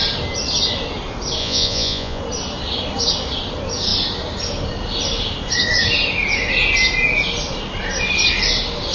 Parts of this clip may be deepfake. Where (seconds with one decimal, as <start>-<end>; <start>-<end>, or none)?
1.4-2.2